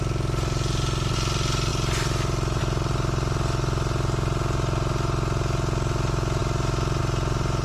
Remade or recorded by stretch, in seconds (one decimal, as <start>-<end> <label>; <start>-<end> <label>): 0.0-1.7 recorded; 1.7-2.6 remade; 2.6-7.6 recorded